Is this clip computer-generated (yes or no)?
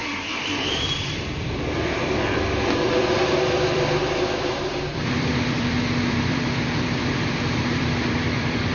yes